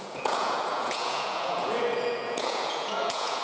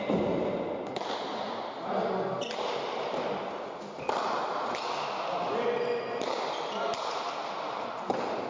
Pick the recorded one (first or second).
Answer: second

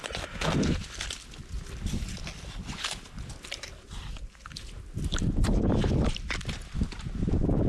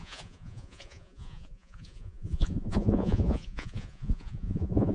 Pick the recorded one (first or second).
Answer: first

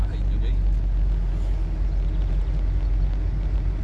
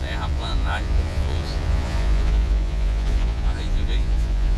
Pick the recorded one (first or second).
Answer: first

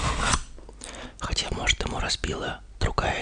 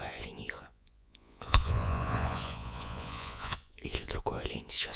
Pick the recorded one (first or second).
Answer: first